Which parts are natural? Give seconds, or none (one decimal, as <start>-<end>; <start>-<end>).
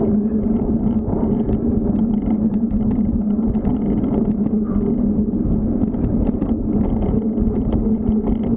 0.0-8.6